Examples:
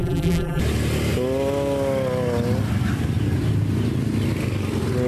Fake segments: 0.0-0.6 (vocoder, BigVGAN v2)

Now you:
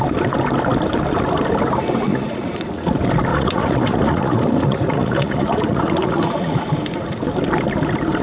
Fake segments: 2.1-2.9 (vocoder, Vocos); 3.3-6.7

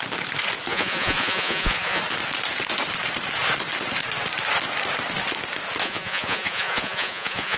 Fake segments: 0.7-2.0 (vocoder, Vocos); 5.8-7.6

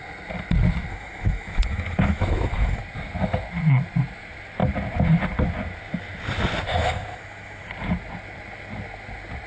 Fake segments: 0.9-2.8 (autoencoder, DAC-VAE); 6.8-7.7

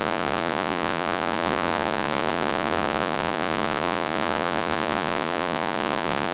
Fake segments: 0.0-6.3 (vocoder, Vocos)

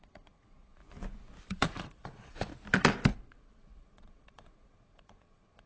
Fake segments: 0.0-0.8 (vocoder, Vocos); 1.5-2.5; 3.1-5.7

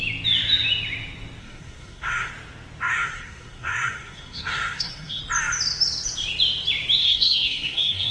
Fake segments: 1.4-2.3 (codec, SNAC); 2.9-5.2; 7.0-8.1

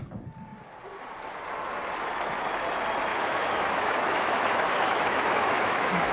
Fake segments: 3.1-6.1 (autoencoder, DAC-VAE)